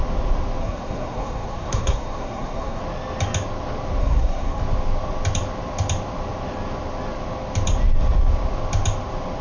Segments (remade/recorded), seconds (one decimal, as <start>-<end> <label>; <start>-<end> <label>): 0.0-0.6 recorded; 0.6-2.8 remade; 2.8-4.0 recorded; 4.0-4.6 remade; 4.6-9.4 recorded